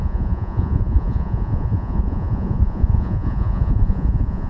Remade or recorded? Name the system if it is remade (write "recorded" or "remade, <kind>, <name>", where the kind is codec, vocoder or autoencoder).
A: remade, vocoder, Vocos